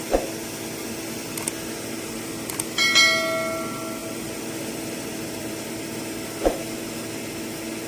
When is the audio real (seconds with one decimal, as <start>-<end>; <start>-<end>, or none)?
0.0-4.0; 5.5-7.9

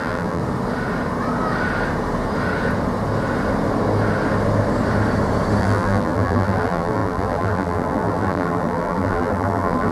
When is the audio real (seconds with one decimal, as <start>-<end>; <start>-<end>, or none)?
0.4-5.6

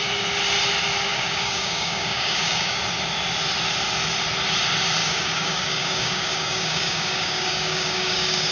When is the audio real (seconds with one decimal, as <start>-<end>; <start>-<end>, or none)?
0.0-1.1; 2.8-5.0

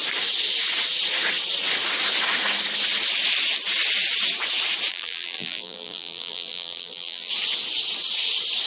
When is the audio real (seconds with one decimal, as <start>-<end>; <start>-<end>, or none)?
0.0-4.9; 7.3-8.7

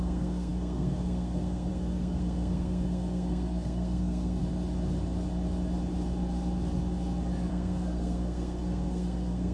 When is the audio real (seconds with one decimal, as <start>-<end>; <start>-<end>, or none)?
4.4-7.5

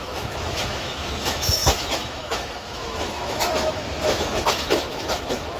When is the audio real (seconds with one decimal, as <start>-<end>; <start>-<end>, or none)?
none

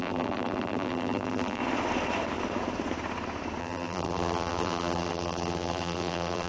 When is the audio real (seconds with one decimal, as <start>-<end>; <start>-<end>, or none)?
1.6-3.6